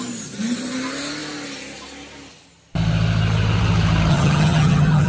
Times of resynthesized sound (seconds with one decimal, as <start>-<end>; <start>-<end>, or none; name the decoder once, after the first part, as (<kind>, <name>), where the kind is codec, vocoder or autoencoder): 4.1-5.1 (vocoder, HiFi-GAN)